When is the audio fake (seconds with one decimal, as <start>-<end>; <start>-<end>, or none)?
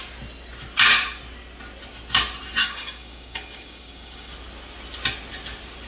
2.6-4.3